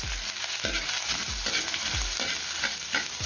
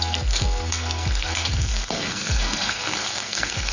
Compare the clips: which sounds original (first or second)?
first